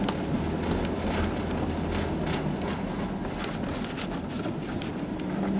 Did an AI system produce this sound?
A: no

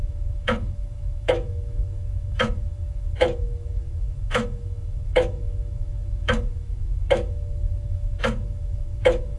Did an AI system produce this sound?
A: yes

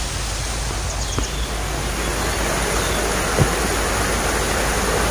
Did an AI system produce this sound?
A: no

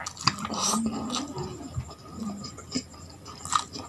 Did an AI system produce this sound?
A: no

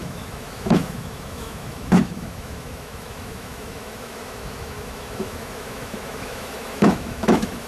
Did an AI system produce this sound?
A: yes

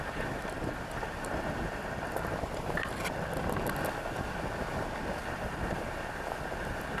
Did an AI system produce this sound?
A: no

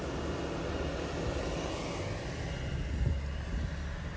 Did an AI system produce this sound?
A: no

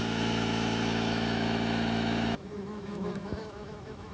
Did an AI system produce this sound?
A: yes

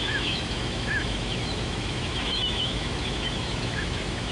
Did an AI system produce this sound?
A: yes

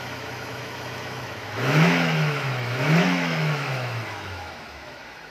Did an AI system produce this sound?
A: yes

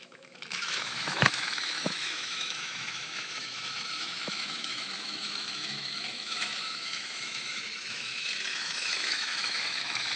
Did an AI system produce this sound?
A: yes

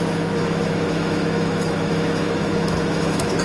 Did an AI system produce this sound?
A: yes